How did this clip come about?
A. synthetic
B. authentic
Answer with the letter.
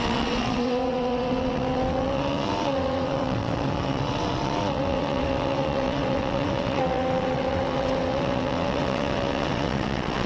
A